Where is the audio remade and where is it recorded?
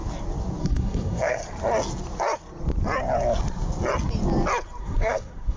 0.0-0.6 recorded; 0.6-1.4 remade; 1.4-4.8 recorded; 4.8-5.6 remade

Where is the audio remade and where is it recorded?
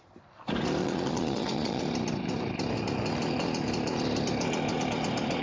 0.0-0.8 recorded; 0.8-1.8 remade; 1.8-5.4 recorded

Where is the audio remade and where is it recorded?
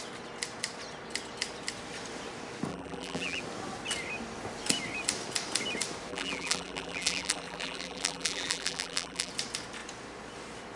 0.0-2.7 recorded; 2.7-3.4 remade; 3.4-6.1 recorded; 6.1-9.3 remade; 9.3-10.8 recorded